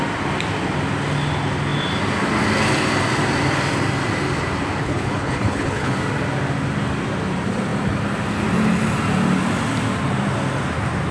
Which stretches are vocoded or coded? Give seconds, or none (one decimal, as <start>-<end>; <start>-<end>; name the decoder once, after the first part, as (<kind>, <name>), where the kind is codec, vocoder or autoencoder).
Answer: 4.8-5.9 (codec, HILCodec)